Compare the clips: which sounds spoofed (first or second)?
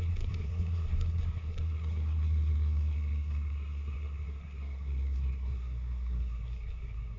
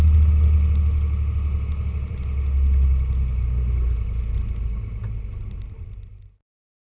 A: first